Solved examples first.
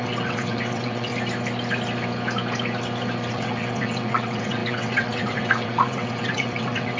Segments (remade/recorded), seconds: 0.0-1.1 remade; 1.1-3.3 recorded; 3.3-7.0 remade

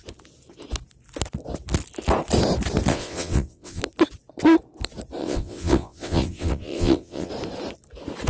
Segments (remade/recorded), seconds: 0.0-2.9 recorded; 2.9-3.8 remade; 3.8-5.2 recorded; 5.2-7.3 remade; 7.3-8.3 recorded

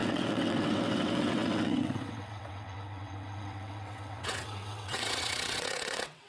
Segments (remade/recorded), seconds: 0.0-6.3 remade

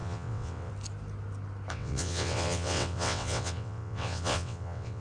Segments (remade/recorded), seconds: 0.0-0.7 remade; 0.7-1.7 recorded; 1.7-5.0 remade